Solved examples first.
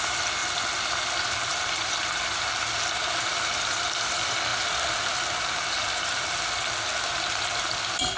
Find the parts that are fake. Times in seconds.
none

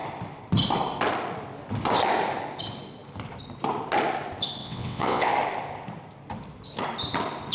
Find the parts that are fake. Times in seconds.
4.6-5.3 (vocoder, WaveNeXt)